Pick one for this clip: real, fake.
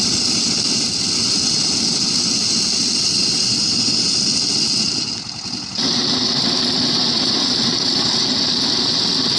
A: real